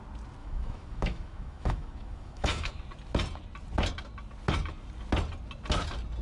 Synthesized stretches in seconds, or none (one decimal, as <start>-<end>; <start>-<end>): 0.4-2.8